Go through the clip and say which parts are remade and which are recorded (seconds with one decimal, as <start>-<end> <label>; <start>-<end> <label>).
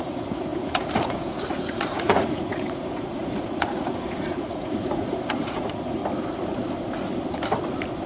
0.0-6.0 remade; 6.0-8.1 recorded